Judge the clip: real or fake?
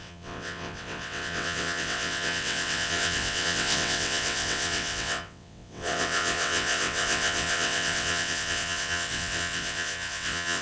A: fake